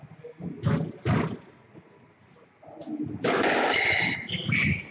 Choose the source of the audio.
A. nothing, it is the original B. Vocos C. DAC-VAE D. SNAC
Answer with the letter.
A